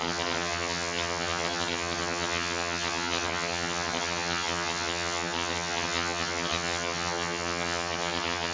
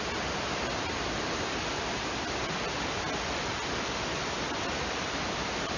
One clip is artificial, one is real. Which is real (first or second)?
second